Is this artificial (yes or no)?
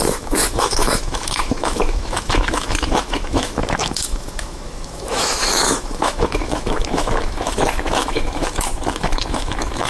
yes